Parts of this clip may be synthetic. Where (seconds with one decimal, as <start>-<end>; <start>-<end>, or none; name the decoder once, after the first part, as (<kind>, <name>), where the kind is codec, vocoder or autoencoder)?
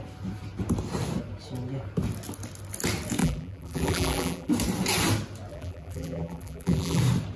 3.2-4.5 (vocoder, BigVGAN v2); 5.5-7.0